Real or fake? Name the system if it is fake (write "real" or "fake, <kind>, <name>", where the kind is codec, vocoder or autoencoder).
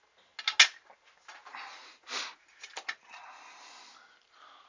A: real